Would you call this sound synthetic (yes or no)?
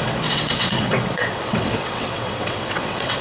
yes